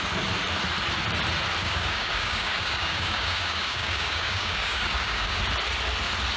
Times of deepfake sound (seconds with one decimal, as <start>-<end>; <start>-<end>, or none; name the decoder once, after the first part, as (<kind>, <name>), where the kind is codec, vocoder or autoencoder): 1.6-5.4 (codec, DAC)